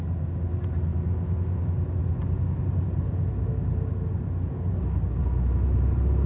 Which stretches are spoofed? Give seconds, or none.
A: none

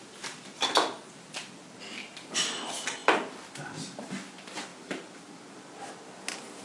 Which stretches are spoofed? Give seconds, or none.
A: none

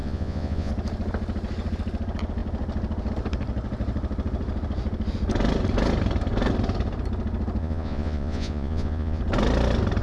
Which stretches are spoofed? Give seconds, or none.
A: 0.0-0.7 (vocoder, Vocos); 7.6-9.2

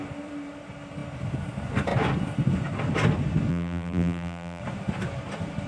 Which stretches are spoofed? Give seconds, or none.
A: 3.5-4.6 (vocoder, BigVGAN v2)